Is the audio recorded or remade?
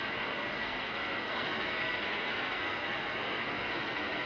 remade